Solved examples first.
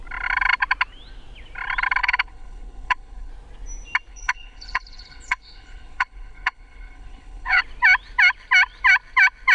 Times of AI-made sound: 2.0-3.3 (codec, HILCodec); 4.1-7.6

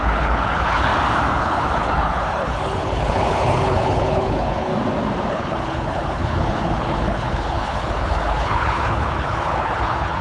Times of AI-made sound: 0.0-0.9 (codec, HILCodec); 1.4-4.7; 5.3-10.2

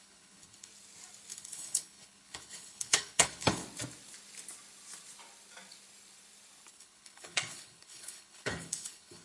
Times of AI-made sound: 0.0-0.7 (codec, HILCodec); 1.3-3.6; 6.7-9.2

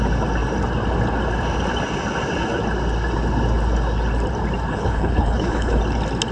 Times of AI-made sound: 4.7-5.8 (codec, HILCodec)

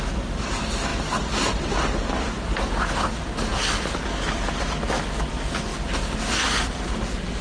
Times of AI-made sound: none

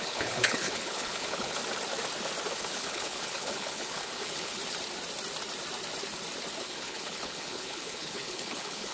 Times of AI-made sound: 0.0-1.6 (codec, HILCodec); 2.5-4.6; 6.6-8.9